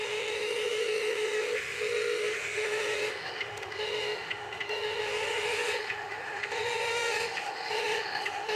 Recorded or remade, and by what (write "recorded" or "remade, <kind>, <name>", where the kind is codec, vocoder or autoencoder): remade, autoencoder, DAC-VAE